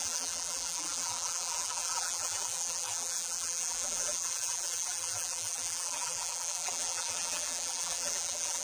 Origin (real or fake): fake